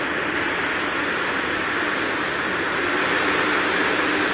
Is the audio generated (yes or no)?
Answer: no